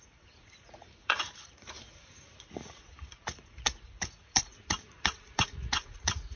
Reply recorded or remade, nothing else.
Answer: remade